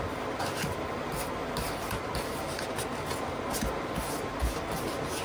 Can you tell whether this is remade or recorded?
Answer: recorded